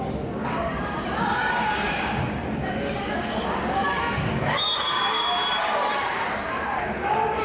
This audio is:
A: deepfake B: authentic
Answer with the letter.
A